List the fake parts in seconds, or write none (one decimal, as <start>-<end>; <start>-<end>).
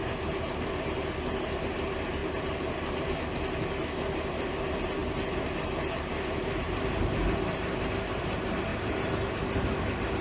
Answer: none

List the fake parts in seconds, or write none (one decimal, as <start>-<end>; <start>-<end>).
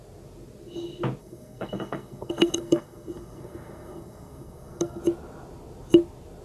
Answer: 1.2-5.0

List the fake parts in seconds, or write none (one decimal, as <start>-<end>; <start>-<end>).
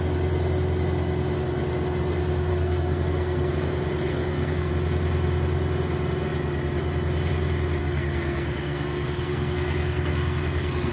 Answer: 2.5-3.5; 4.1-4.7; 7.8-10.9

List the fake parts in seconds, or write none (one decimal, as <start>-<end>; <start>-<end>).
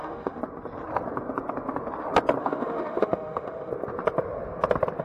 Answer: 0.0-0.4; 2.4-3.7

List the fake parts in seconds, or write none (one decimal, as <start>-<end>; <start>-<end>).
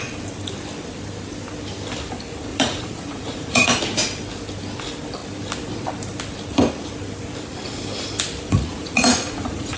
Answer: 2.5-3.8; 8.5-9.8